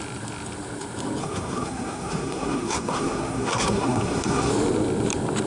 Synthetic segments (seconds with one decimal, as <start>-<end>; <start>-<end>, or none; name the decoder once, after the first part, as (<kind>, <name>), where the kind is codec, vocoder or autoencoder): 1.2-4.5 (codec, SNAC)